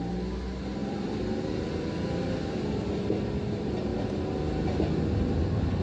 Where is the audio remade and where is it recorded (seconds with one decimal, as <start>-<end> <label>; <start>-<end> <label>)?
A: 0.0-0.8 recorded; 0.8-2.2 remade; 2.2-5.8 recorded